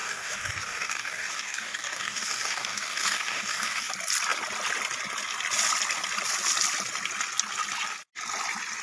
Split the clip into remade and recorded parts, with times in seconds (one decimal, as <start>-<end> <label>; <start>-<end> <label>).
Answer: 0.0-3.9 remade; 3.9-8.8 recorded